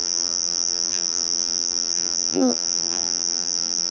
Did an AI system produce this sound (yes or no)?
yes